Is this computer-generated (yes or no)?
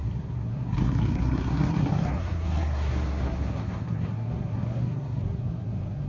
yes